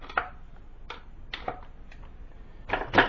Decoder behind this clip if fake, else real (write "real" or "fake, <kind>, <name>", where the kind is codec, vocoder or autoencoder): real